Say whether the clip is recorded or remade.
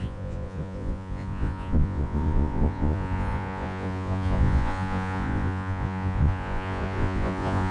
remade